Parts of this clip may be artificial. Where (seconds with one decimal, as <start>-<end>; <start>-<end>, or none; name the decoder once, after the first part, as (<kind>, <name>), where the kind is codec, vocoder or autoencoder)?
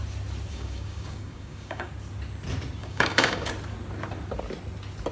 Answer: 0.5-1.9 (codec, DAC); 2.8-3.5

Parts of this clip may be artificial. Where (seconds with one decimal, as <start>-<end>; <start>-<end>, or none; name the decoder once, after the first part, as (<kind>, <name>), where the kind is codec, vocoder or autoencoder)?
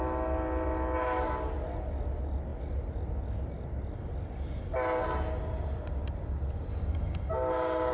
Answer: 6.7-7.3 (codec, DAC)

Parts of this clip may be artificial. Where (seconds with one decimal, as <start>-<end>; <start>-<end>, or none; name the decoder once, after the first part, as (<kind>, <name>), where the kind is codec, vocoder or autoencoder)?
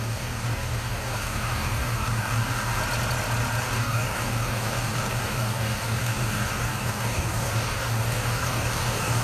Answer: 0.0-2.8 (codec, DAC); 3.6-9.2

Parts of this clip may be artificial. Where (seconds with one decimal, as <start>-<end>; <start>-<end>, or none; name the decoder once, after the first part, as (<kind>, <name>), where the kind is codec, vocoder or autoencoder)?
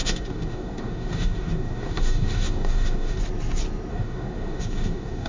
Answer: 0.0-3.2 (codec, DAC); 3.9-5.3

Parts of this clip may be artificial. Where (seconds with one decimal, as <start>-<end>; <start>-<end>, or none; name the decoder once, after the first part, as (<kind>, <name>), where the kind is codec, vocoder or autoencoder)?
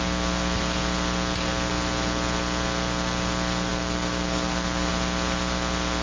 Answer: 3.7-4.9 (codec, DAC)